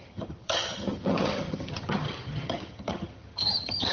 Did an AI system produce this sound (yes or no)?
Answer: yes